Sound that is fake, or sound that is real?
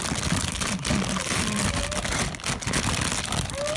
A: real